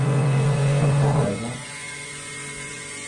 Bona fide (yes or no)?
no